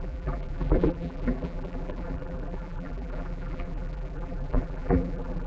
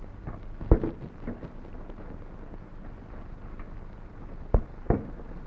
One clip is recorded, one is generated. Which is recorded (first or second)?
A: second